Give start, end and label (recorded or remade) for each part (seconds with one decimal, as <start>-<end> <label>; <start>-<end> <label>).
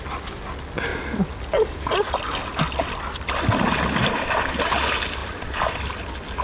0.0-4.0 recorded; 4.0-4.7 remade; 4.7-5.2 recorded; 5.2-5.8 remade; 5.8-6.4 recorded